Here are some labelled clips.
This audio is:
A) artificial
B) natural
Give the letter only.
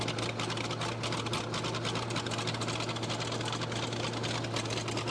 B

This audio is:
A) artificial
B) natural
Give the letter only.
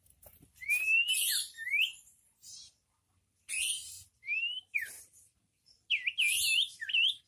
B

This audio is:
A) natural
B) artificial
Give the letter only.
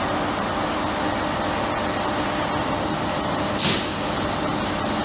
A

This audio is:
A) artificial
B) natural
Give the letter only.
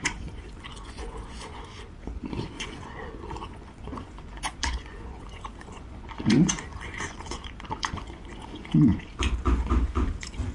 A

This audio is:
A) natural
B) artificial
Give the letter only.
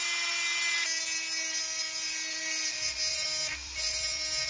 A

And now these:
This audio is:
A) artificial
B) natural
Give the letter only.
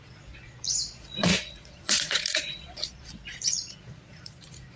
A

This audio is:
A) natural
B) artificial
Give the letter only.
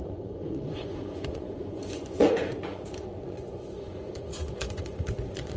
B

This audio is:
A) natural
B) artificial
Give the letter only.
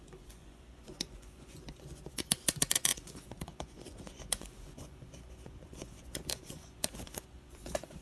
B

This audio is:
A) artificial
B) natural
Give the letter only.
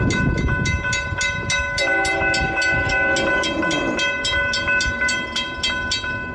B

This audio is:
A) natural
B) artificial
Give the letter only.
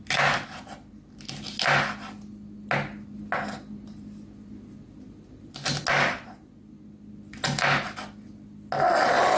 A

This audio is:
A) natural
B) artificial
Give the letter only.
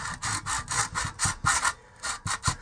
A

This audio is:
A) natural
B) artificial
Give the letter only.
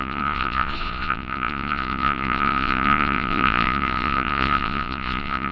B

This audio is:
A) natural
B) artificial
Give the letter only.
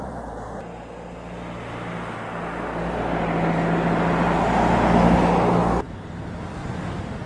A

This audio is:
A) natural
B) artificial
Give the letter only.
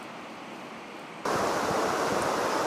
A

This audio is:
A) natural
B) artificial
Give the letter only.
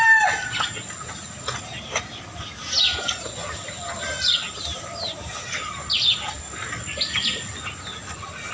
A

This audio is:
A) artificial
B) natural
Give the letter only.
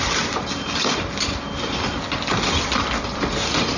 B